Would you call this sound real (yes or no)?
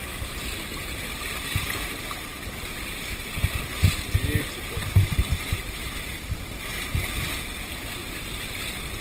yes